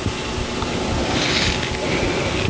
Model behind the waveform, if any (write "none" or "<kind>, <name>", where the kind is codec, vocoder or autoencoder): none